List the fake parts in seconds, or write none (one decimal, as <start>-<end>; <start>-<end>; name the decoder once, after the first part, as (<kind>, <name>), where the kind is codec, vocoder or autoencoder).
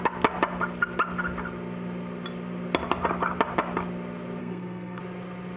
4.4-5.0 (codec, SNAC)